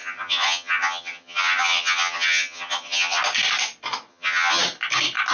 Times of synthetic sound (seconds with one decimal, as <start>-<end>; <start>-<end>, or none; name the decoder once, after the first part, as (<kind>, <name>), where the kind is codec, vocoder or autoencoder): 0.0-3.2 (vocoder, HiFi-GAN); 4.1-4.6